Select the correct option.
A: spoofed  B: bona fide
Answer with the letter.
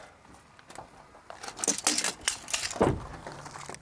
B